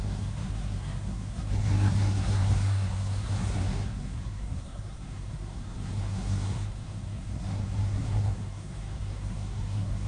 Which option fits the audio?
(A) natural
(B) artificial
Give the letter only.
B